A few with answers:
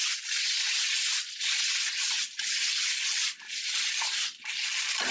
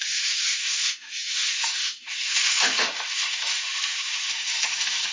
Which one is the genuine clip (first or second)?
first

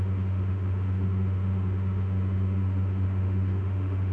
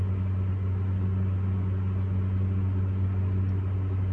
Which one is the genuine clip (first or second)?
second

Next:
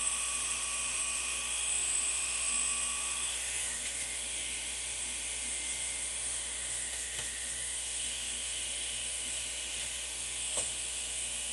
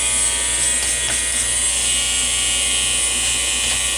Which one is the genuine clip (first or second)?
second